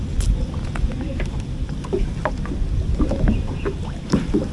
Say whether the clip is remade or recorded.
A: recorded